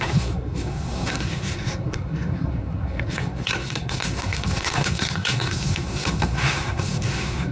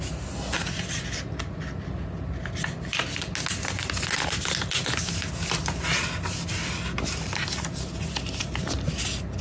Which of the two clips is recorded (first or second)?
second